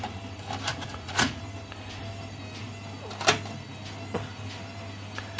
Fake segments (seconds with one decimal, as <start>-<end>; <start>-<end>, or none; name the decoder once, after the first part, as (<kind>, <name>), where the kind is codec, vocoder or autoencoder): 0.7-1.4 (vocoder, Vocos)